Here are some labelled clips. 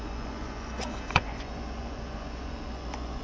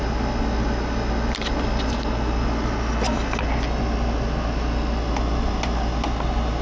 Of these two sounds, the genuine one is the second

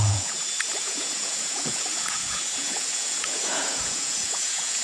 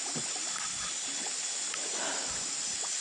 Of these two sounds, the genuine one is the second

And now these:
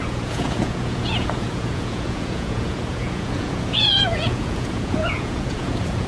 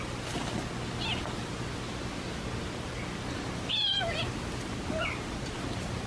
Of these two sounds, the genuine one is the second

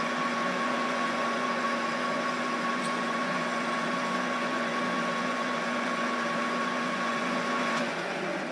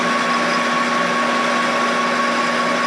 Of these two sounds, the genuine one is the second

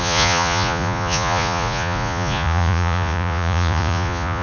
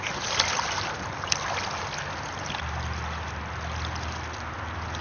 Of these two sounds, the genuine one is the second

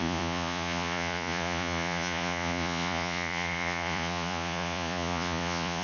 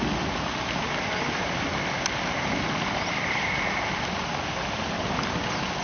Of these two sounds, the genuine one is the second